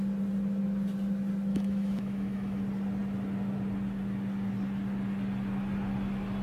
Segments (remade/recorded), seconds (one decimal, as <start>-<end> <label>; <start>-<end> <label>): 0.0-1.5 recorded; 1.5-2.6 remade; 2.6-6.4 recorded